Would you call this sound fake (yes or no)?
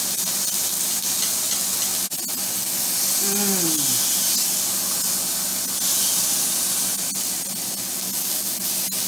no